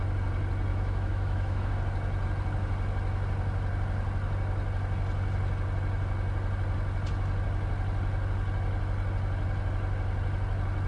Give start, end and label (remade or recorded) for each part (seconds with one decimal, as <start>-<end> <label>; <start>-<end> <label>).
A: 0.0-0.7 recorded; 0.7-1.7 remade; 1.7-10.9 recorded